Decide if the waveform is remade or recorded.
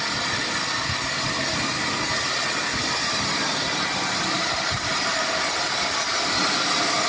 recorded